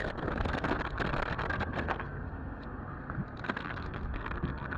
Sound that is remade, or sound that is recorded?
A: remade